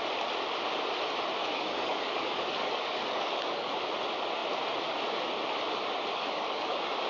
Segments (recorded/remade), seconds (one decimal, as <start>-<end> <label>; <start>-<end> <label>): 0.0-1.4 recorded; 1.4-3.7 remade; 3.7-6.1 recorded; 6.1-7.1 remade